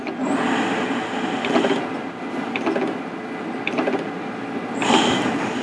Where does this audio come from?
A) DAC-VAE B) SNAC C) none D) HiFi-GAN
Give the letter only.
C